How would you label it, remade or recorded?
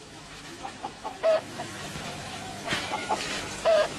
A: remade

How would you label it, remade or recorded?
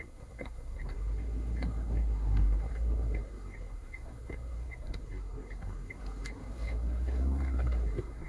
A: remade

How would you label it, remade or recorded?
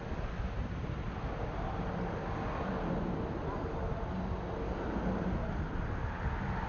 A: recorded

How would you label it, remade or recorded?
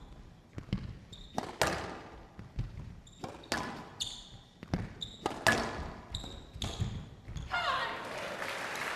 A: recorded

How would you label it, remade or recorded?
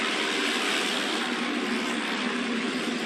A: remade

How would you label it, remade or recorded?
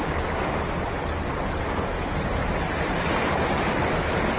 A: recorded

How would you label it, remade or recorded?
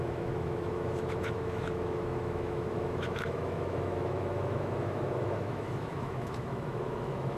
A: remade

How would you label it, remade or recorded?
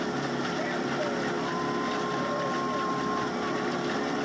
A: recorded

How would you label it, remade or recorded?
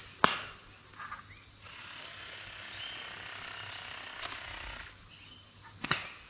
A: recorded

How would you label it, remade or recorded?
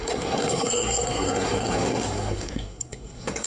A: remade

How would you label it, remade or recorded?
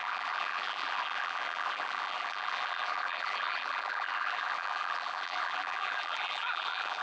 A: remade